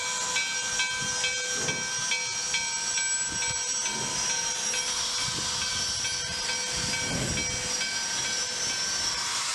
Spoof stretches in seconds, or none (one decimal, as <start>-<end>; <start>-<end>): none